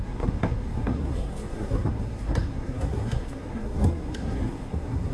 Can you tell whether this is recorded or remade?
remade